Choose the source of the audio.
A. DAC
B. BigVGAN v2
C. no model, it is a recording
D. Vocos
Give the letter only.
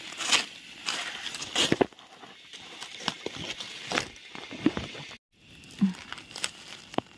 C